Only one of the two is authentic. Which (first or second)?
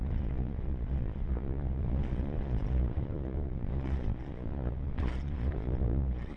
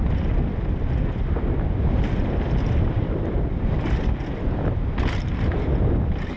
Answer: second